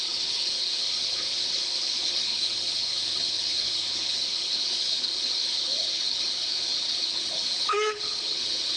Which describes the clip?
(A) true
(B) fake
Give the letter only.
B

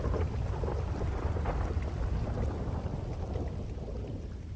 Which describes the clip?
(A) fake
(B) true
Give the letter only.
B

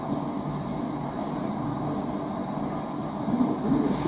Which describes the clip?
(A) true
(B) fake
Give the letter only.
A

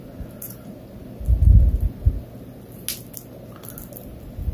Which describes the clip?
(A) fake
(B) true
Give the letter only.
B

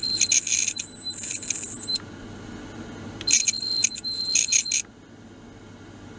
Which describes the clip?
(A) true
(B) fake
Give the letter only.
A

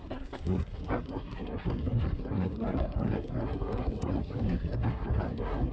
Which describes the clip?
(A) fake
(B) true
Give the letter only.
A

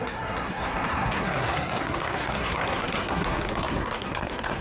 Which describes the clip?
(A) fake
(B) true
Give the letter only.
A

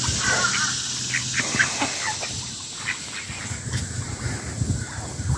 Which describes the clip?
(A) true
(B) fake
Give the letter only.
A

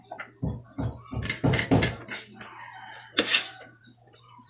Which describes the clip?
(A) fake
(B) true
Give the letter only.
B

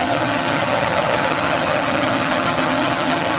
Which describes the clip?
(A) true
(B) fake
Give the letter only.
B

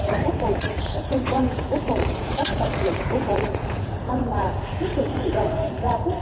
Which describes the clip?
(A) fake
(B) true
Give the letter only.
A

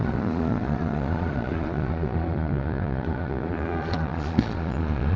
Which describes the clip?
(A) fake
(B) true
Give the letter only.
A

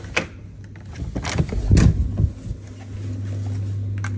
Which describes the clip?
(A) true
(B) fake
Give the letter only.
A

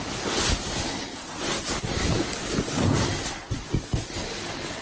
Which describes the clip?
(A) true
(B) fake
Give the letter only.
A